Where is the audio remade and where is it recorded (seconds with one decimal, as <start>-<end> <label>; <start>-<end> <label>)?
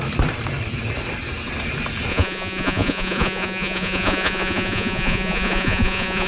0.0-2.1 recorded; 2.1-6.3 remade